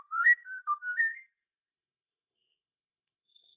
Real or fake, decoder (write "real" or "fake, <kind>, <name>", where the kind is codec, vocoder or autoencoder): fake, codec, SNAC